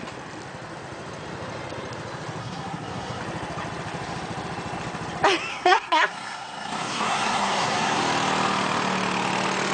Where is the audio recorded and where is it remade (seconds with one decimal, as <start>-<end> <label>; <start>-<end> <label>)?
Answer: 0.0-2.4 recorded; 2.4-3.2 remade; 3.2-5.5 recorded; 5.5-8.0 remade; 8.0-9.7 recorded